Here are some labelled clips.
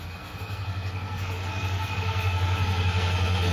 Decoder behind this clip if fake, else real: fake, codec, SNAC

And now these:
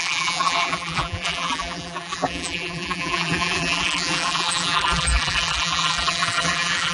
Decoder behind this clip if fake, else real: fake, vocoder, BigVGAN v2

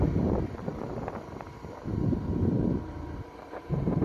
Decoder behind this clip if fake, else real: fake, vocoder, BigVGAN v2